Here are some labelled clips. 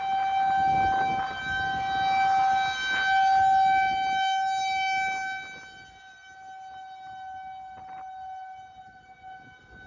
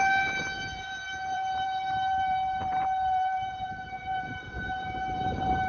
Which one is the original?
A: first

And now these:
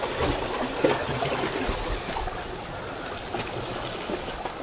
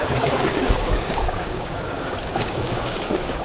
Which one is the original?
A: first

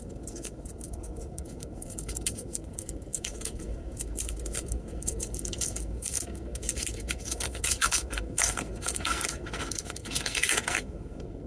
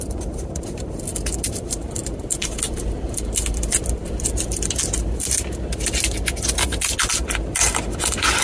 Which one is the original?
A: second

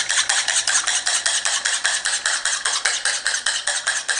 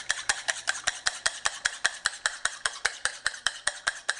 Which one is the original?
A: first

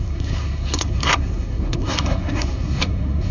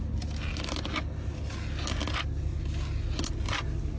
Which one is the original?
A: second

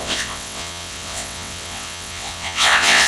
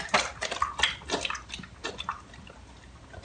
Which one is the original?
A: second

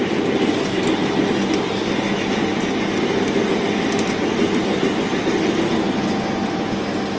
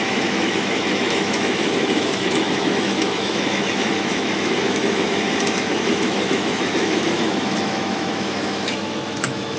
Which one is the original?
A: first